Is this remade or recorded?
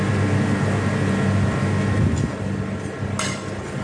recorded